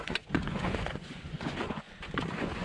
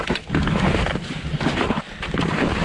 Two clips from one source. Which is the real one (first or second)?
second